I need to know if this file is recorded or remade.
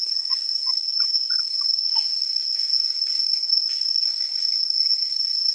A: remade